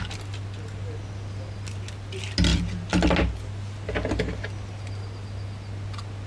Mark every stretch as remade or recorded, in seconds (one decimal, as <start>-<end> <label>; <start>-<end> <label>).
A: 0.0-6.3 recorded